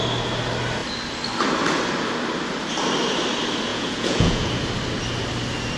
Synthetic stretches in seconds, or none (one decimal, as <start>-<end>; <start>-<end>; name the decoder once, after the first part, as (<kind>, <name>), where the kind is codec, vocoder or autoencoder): 3.7-4.5 (vocoder, Vocos)